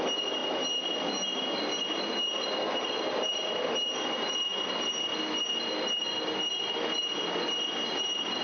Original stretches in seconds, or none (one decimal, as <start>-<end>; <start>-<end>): 0.0-8.4